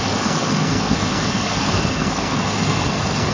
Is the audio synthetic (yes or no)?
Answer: yes